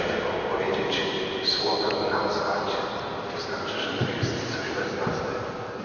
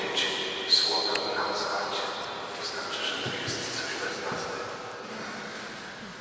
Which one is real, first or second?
second